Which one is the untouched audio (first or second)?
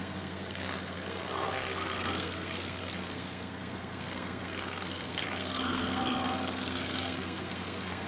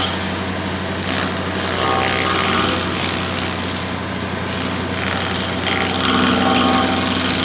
second